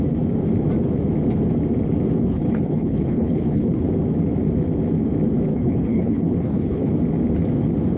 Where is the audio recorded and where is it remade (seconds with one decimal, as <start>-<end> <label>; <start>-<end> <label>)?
0.0-2.2 recorded; 2.2-3.9 remade; 3.9-5.5 recorded; 5.5-6.9 remade; 6.9-8.0 recorded